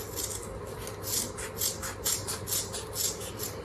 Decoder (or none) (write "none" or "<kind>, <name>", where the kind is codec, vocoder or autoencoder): none